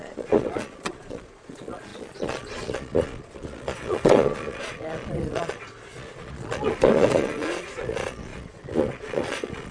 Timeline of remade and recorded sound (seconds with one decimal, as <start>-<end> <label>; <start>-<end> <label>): 0.0-9.7 remade